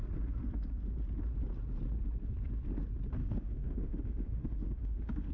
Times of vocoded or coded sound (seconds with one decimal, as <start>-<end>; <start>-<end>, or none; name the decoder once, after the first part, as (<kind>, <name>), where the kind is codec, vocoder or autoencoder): 3.2-5.3 (autoencoder, DAC-VAE)

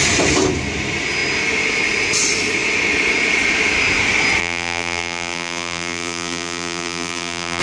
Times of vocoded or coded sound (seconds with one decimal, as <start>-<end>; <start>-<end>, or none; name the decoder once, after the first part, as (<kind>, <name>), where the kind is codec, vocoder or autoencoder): 4.4-7.6 (vocoder, BigVGAN v2)